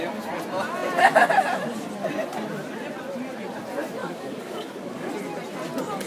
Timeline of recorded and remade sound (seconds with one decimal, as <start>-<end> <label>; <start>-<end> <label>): 0.0-4.0 recorded; 4.0-5.1 remade; 5.1-6.1 recorded